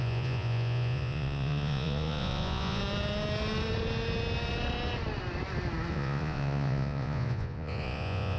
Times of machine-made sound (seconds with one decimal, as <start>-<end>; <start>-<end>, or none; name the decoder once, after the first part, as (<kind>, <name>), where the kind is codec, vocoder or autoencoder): 0.0-2.8 (vocoder, Vocos); 5.9-8.4